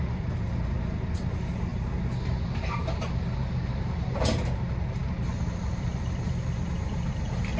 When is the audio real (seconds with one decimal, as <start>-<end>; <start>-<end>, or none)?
0.0-7.6

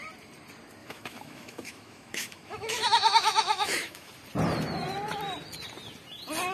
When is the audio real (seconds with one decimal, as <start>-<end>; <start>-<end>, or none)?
0.0-0.8; 4.1-6.5

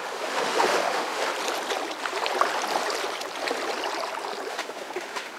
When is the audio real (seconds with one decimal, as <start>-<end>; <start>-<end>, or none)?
1.3-4.5

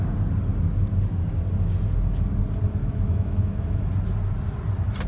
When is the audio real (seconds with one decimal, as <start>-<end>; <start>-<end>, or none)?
0.0-2.8; 3.9-5.1

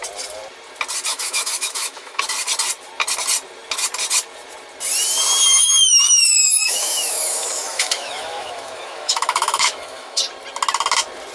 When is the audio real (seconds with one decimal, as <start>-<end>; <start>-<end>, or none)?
0.0-1.1; 2.2-5.6; 10.2-11.3

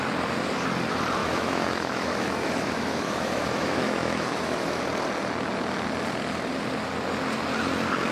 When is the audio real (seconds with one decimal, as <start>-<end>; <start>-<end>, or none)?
0.0-1.2; 4.8-8.1

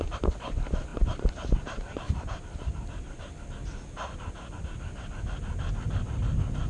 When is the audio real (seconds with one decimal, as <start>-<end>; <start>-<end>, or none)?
0.0-6.7

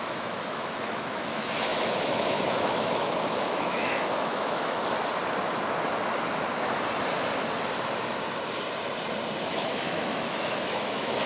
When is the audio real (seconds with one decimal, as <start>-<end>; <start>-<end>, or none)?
4.8-9.4